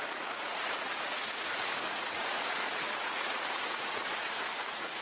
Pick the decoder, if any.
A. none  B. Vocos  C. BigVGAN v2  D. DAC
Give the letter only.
B